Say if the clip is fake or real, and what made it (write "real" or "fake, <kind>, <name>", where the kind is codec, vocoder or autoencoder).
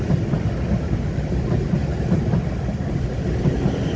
real